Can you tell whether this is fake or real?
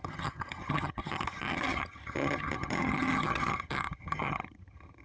fake